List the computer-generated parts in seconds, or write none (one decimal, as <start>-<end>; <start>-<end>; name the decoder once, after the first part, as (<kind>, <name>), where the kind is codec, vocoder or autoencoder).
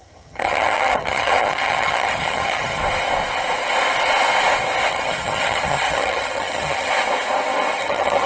0.0-2.8 (vocoder, HiFi-GAN); 4.9-6.9; 7.8-8.3